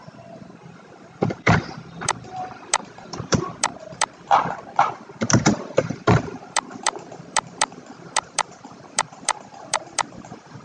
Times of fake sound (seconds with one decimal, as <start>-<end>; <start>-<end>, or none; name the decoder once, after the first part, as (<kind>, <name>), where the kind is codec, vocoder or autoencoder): 0.0-10.6 (vocoder, BigVGAN v2)